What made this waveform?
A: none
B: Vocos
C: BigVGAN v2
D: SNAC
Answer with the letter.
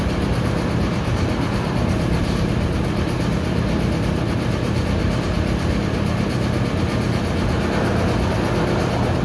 A